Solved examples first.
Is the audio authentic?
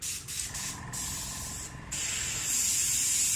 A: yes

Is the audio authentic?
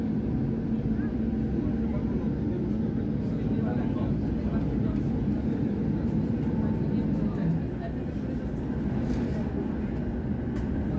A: yes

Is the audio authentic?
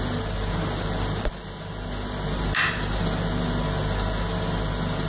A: yes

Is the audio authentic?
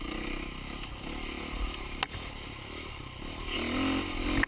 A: yes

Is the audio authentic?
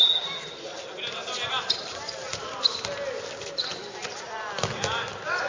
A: yes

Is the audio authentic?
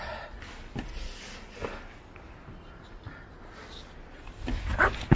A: yes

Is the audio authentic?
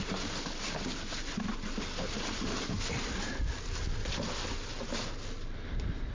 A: yes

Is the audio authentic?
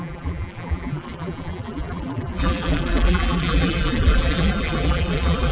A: no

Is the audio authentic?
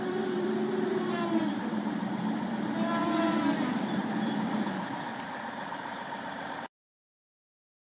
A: no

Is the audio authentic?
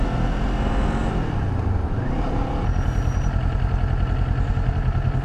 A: yes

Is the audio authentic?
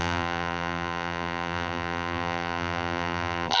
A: no